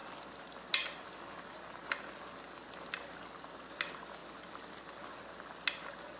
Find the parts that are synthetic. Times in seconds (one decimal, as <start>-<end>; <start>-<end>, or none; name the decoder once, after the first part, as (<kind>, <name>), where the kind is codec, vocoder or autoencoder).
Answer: 4.2-5.0 (vocoder, BigVGAN v2)